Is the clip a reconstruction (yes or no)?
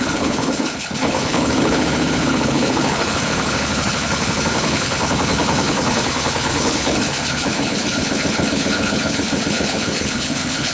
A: yes